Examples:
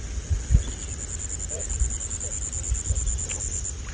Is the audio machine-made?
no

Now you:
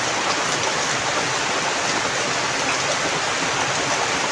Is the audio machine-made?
no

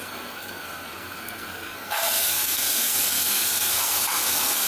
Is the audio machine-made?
yes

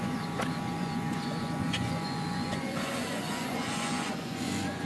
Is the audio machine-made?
yes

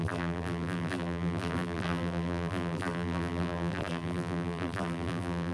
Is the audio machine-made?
yes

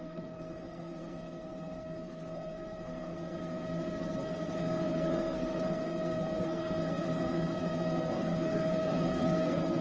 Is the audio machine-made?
yes